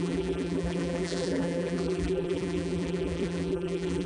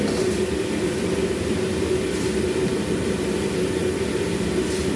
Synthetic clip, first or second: first